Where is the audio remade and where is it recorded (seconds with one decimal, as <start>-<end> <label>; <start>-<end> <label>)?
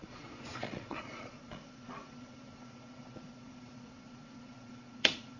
0.0-5.4 remade